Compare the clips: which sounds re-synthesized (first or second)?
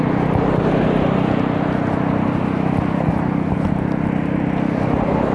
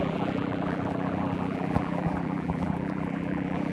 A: second